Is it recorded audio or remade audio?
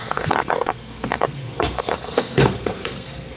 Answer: remade